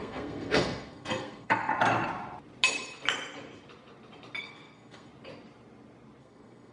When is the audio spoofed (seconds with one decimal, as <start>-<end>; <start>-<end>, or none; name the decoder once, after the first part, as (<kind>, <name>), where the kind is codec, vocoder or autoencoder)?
0.0-1.7 (codec, SNAC); 4.4-5.1; 6.2-6.7